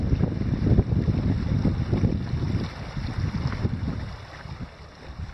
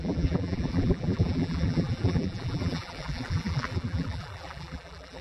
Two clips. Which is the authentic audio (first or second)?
first